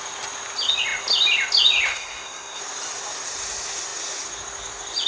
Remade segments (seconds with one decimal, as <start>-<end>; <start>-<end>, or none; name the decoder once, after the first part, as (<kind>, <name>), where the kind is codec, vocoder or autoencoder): 1.9-2.6 (codec, SNAC)